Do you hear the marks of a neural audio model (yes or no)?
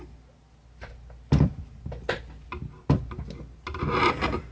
no